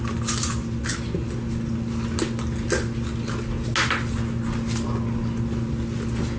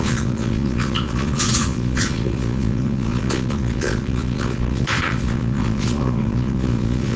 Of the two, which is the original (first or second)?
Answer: first